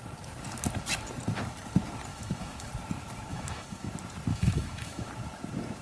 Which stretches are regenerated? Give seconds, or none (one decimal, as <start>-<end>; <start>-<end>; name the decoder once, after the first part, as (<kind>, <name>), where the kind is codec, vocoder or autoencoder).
2.1-2.7 (autoencoder, DAC-VAE); 3.3-3.9; 4.3-5.1